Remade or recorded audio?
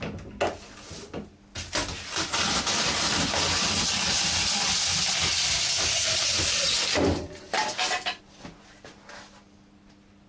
recorded